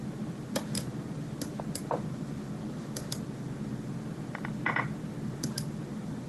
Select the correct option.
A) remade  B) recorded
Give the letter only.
B